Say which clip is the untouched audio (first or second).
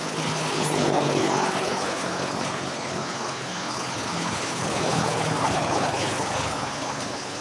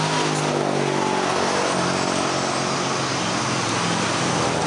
second